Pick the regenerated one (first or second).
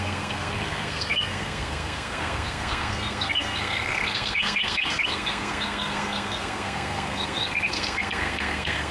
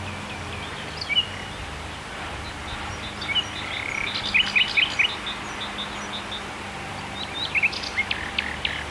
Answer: first